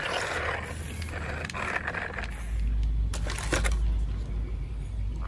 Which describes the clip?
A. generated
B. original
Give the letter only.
B